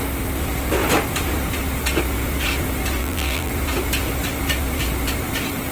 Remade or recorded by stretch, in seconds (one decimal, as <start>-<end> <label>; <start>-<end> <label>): 0.0-3.0 recorded; 3.0-3.5 remade; 3.5-5.7 recorded